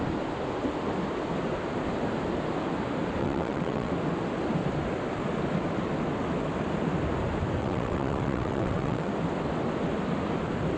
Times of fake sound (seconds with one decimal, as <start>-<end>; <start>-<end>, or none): 3.2-3.9; 7.6-9.1